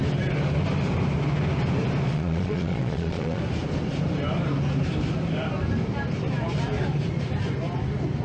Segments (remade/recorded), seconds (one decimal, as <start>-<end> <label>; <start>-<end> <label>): 0.0-2.1 recorded; 2.1-3.4 remade; 3.4-8.2 recorded